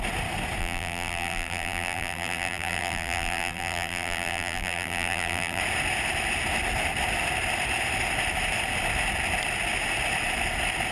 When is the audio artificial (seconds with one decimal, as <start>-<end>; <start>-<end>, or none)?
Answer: 0.6-5.6